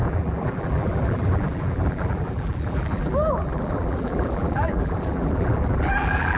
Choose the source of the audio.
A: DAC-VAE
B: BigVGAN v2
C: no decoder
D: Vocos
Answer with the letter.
B